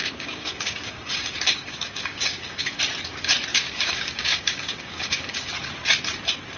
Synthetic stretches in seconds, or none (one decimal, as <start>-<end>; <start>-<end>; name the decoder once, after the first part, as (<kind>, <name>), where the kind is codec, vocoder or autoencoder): 0.0-2.8 (codec, DAC); 3.5-5.5